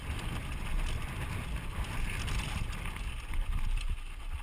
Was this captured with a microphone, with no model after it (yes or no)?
yes